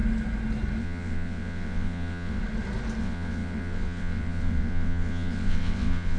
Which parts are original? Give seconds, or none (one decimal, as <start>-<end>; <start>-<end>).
0.0-0.8; 2.4-3.0